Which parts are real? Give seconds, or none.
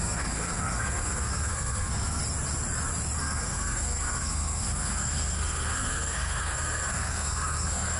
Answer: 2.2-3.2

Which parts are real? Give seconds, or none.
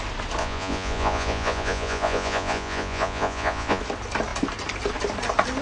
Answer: 0.0-0.4; 3.8-5.6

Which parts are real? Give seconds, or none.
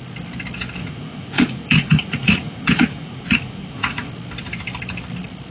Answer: 0.0-0.8; 4.1-5.5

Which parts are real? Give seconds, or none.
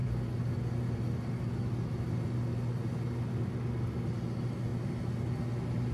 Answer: 0.0-5.9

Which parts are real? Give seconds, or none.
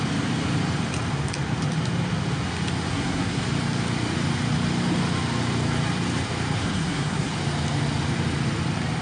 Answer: 0.0-2.9; 3.4-6.6; 7.3-9.0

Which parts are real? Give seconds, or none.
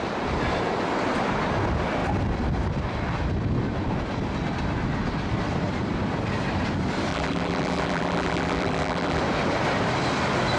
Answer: 0.0-7.1; 9.2-10.6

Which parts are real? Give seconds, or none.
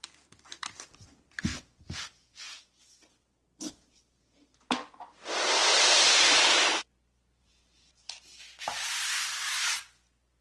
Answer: 0.0-10.4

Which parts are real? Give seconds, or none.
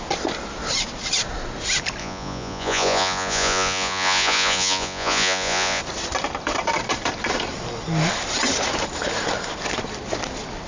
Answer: 0.0-2.0; 5.8-10.7